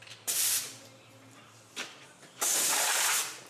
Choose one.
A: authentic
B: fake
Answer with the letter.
B